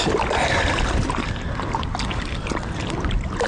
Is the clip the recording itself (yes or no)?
yes